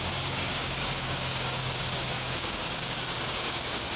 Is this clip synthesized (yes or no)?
yes